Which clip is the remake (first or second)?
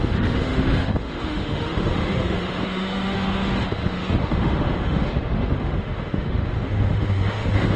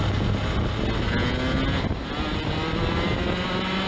first